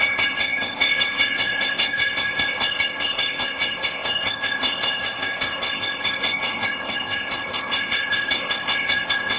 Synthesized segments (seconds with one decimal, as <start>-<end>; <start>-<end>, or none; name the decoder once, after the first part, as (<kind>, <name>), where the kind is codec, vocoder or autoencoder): 0.0-9.4 (codec, ZipCodec)